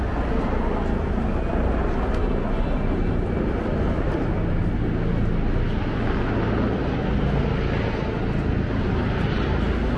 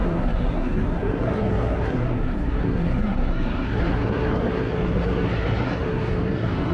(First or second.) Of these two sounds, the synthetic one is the second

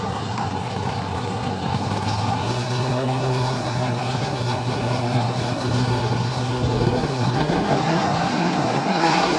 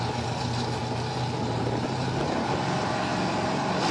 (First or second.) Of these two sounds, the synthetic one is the first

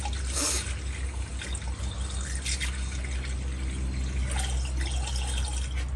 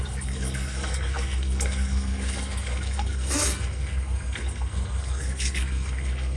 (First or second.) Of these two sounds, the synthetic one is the second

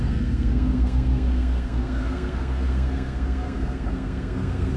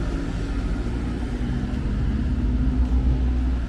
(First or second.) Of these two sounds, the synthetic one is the first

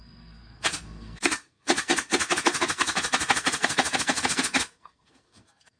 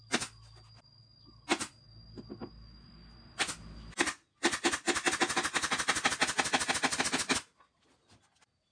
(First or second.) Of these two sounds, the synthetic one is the first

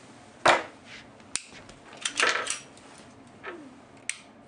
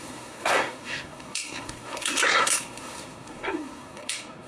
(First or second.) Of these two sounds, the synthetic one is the second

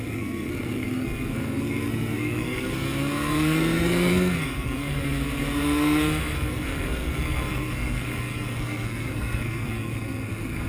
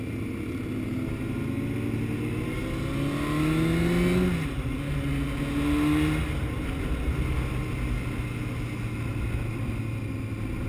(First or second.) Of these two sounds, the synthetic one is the first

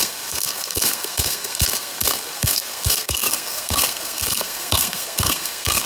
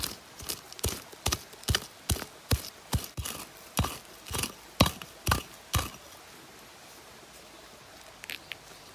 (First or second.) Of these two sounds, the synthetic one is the first